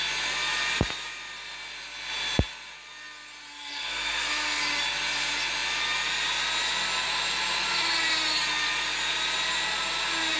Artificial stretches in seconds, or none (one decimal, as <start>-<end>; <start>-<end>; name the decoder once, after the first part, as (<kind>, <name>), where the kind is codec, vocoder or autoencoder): 3.5-4.6 (codec, SNAC)

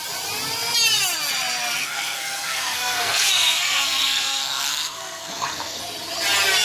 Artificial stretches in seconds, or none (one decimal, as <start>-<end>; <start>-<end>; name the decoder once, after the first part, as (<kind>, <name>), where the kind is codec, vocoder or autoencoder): 1.8-5.8 (codec, SNAC)

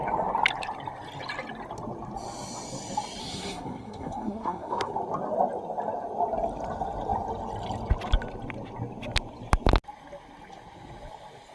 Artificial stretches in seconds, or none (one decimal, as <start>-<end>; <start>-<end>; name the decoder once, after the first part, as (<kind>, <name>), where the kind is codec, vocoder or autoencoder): 3.2-4.9 (codec, SNAC)

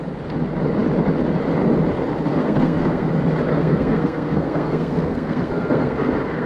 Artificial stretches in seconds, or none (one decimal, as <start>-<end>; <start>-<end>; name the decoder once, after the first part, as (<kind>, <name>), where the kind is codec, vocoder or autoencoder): 2.3-3.1 (codec, SNAC); 3.5-6.5

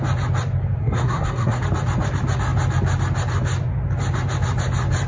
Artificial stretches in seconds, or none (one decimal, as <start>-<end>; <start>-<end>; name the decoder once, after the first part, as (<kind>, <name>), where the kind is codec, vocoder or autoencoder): 0.8-1.6 (codec, SNAC)

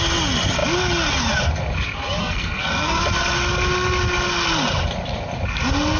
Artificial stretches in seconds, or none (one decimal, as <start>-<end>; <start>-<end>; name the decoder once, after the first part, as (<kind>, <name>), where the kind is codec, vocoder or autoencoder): 2.2-3.0 (codec, SNAC)